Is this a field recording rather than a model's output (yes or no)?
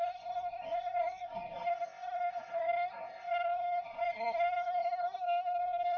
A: no